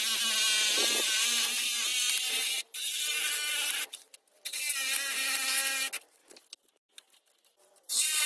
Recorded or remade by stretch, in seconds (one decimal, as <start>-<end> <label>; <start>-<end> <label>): 0.0-3.5 recorded; 3.5-4.7 remade; 4.7-6.2 recorded; 6.2-8.3 remade